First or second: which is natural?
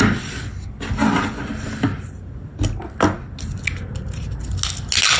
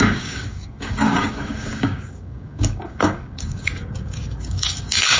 first